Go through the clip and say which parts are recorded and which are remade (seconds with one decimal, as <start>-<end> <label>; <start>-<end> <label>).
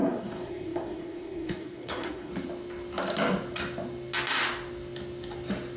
0.0-2.3 remade; 2.3-5.8 recorded